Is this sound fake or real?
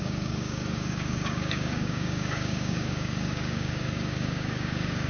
fake